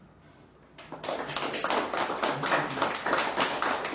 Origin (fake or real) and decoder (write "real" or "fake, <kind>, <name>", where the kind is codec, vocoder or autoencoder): real